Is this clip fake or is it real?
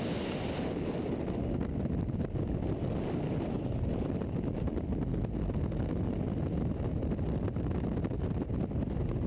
real